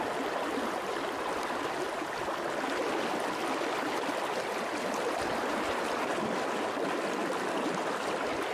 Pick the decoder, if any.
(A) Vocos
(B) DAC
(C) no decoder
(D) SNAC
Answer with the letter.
C